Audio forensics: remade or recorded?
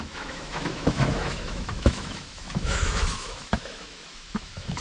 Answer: remade